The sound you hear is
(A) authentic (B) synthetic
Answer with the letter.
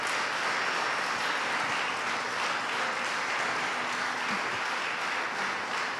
A